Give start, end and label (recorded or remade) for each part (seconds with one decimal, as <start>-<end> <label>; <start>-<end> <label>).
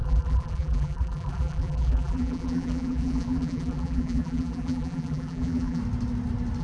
0.0-5.8 remade; 5.8-6.6 recorded